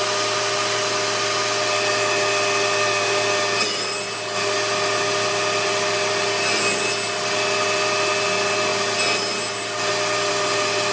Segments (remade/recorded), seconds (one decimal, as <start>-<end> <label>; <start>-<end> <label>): 0.0-10.9 recorded